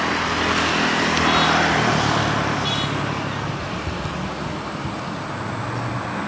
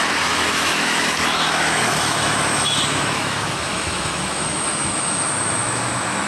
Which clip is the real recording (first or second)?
first